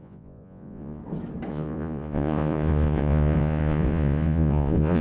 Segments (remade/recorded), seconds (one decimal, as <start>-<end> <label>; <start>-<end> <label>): 0.0-1.0 remade; 1.0-1.5 recorded; 1.5-5.0 remade